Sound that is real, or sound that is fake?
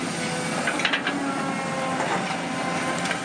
real